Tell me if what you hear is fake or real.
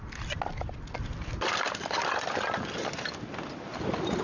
real